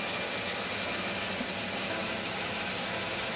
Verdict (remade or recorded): recorded